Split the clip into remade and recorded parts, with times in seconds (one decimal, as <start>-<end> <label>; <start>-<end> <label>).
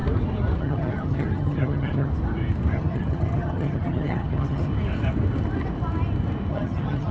0.0-0.6 recorded; 0.6-2.1 remade; 2.1-2.7 recorded; 2.7-4.7 remade; 4.7-6.5 recorded; 6.5-7.1 remade